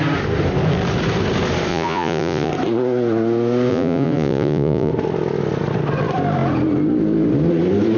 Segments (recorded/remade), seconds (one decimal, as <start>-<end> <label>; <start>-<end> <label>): 0.0-1.7 recorded; 1.7-2.5 remade; 2.5-3.7 recorded; 3.7-4.9 remade; 4.9-8.0 recorded